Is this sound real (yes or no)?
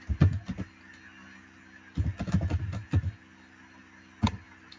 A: yes